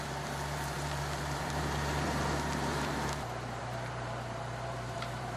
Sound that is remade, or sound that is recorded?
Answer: remade